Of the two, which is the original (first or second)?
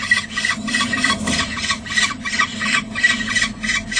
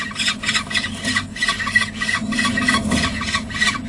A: second